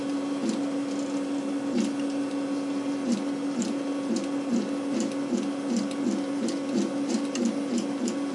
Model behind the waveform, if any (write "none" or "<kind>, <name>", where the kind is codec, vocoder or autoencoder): none